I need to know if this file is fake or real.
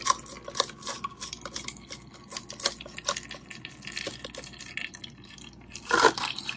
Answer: real